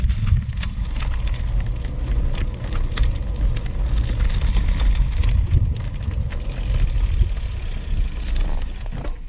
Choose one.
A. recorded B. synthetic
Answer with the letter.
A